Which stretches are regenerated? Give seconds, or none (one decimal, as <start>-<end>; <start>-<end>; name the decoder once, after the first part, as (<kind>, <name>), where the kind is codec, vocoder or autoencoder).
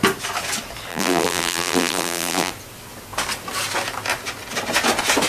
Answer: 0.9-2.5 (vocoder, BigVGAN v2)